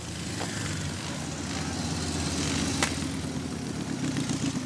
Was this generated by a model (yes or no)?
no